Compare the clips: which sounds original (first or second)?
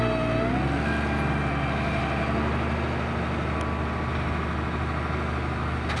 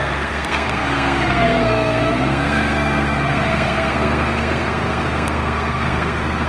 first